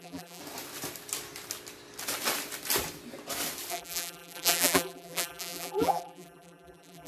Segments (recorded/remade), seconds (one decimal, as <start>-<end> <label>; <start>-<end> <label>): 0.0-0.4 remade; 0.4-3.7 recorded; 3.7-7.1 remade